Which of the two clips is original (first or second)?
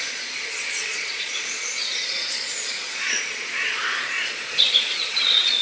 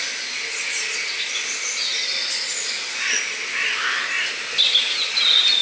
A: second